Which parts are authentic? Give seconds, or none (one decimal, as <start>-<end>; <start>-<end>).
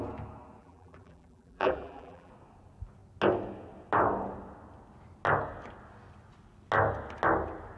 0.0-0.6; 2.3-7.8